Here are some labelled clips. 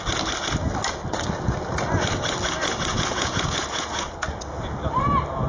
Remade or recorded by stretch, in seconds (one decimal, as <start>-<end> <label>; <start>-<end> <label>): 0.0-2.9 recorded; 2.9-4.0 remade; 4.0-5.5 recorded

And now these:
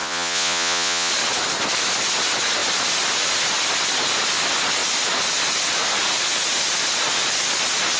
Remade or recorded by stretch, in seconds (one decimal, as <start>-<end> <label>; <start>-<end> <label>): 0.0-1.1 remade; 1.1-8.0 recorded

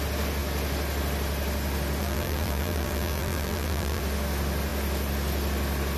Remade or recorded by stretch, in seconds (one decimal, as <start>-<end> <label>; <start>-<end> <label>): 0.0-2.0 recorded; 2.0-4.0 remade; 4.0-6.0 recorded

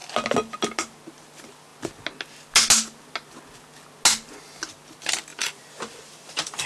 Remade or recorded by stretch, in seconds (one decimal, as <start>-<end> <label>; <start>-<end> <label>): 0.0-5.3 recorded; 5.3-6.7 remade